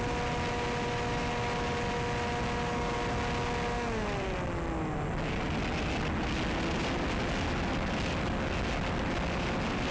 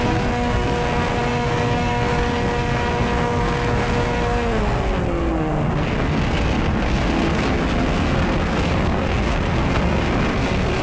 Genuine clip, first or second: first